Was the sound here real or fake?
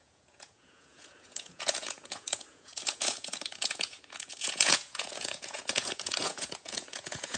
fake